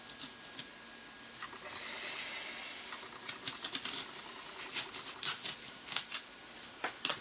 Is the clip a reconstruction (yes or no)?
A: no